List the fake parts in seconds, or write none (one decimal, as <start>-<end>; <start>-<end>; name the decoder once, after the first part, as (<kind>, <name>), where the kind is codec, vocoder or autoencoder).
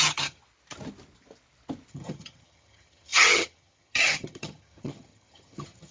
0.0-0.4 (vocoder, HiFi-GAN); 1.9-5.9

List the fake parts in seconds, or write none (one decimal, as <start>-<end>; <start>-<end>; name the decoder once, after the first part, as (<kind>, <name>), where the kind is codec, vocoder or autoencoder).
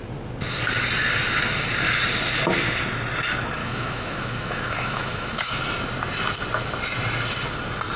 3.6-5.6 (autoencoder, DAC-VAE)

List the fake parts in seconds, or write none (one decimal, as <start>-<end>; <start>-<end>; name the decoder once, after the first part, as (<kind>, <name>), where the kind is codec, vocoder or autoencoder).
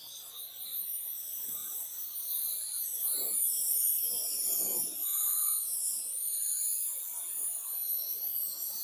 1.6-3.9 (vocoder, BigVGAN v2)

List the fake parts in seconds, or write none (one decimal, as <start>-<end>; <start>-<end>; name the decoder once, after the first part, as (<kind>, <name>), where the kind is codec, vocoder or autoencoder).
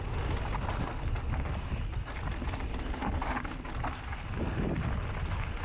none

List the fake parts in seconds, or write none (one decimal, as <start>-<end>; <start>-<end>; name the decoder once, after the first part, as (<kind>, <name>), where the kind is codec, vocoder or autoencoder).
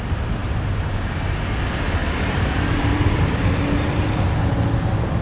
0.4-1.2 (vocoder, BigVGAN v2); 2.0-3.3